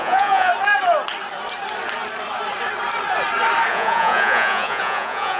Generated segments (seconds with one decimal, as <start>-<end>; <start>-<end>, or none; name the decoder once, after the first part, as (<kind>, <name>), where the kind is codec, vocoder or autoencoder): 0.0-0.5 (vocoder, Vocos); 3.7-5.4